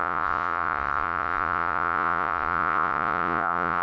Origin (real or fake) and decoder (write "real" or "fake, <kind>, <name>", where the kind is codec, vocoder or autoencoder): fake, vocoder, Vocos